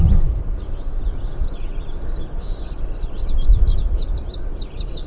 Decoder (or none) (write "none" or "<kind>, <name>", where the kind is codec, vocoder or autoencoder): vocoder, BigVGAN v2